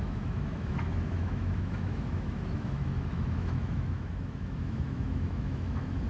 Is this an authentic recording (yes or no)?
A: no